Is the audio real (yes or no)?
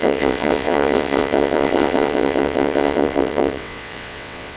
no